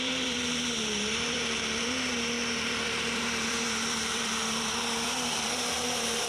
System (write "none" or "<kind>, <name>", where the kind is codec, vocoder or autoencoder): vocoder, BigVGAN v2